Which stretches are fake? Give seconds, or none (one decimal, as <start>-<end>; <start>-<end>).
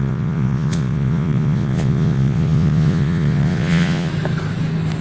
0.0-4.1